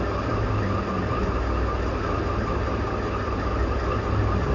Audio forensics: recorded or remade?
recorded